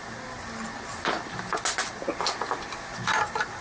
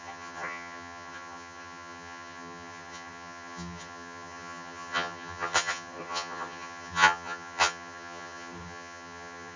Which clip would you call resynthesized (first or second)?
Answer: second